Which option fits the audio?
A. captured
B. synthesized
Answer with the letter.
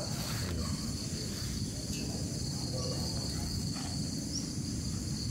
B